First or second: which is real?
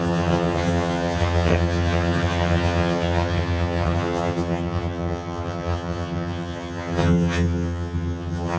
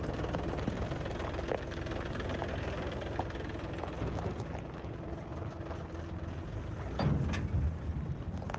second